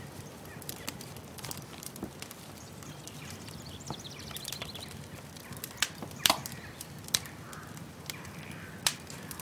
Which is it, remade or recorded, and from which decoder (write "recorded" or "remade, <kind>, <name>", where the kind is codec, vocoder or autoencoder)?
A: remade, vocoder, BigVGAN v2